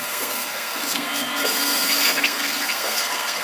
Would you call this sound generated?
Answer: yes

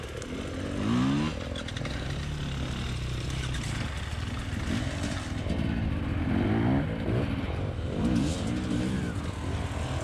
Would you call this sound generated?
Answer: no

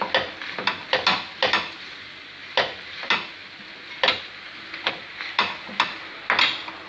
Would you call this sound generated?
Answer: no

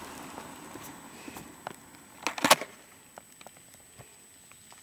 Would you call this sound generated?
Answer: no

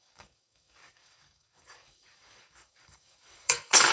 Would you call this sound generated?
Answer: yes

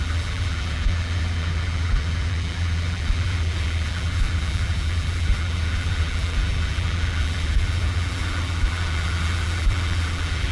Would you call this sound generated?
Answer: yes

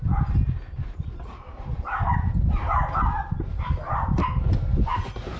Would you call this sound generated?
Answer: no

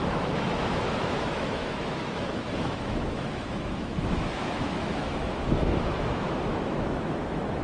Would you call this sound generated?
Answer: yes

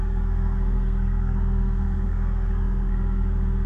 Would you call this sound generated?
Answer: yes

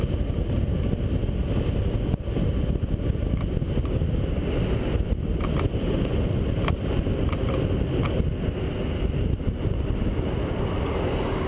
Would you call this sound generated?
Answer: no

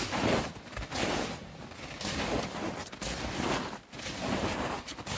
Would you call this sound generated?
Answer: no